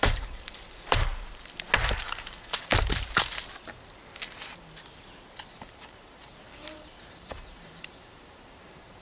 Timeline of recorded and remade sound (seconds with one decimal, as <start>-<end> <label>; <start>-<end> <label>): 0.0-1.1 remade; 1.1-1.9 recorded; 1.9-2.7 remade; 2.7-5.5 recorded; 5.5-9.0 remade

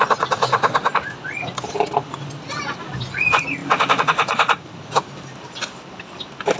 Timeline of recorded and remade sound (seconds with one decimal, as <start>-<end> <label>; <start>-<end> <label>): 0.0-3.6 recorded; 3.6-6.6 remade

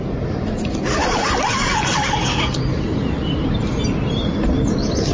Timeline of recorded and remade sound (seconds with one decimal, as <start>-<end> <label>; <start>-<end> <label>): 0.0-1.0 recorded; 1.0-3.5 remade; 3.5-5.1 recorded

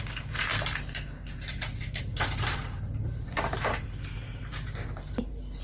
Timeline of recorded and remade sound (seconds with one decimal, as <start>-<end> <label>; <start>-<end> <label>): 0.0-0.5 remade; 0.5-2.0 recorded; 2.0-5.6 remade

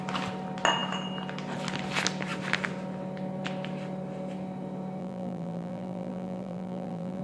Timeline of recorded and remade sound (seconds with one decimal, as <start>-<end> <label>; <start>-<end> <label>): 0.0-5.0 recorded; 5.0-7.2 remade